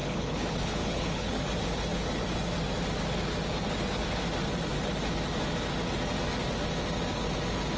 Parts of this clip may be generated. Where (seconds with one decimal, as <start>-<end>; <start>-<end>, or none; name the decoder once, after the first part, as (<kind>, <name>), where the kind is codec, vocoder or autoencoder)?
0.0-1.4 (codec, HILCodec)